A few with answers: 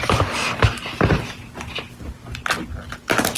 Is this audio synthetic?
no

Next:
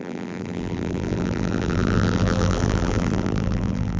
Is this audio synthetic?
yes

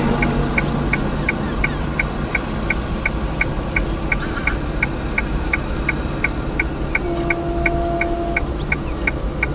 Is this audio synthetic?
no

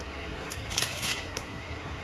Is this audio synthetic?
yes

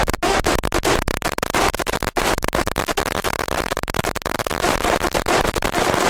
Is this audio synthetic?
no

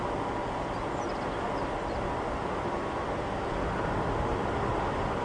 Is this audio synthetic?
no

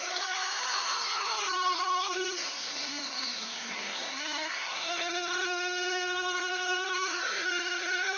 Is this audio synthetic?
yes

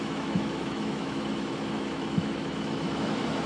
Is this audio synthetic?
yes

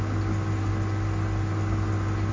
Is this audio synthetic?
no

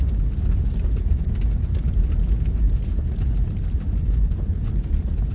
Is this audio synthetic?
no